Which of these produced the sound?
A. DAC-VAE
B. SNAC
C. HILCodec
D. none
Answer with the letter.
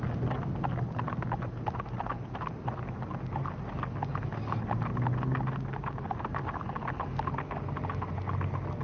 D